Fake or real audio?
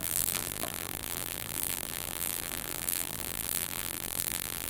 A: fake